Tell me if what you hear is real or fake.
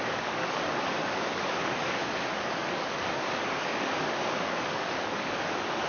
fake